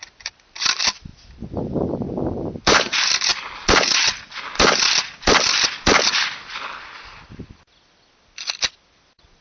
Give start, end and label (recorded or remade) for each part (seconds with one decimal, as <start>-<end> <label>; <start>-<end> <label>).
0.0-9.4 recorded

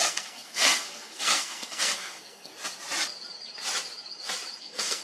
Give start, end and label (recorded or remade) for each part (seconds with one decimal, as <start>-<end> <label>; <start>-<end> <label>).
0.0-2.5 remade; 2.5-4.6 recorded; 4.6-5.0 remade

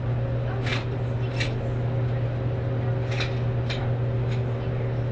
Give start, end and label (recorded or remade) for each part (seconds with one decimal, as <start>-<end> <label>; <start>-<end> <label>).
0.0-5.1 recorded